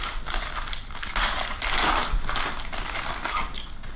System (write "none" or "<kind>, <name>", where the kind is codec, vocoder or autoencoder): none